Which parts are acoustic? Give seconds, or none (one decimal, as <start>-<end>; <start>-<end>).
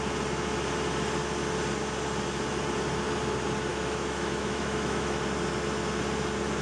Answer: 0.0-3.7; 5.2-6.6